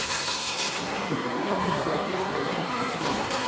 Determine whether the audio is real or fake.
fake